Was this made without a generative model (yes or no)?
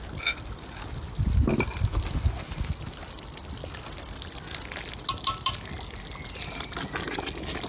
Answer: yes